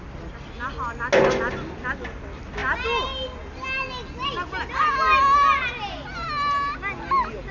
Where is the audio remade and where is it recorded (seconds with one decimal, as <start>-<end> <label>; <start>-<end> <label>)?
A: 0.0-7.5 recorded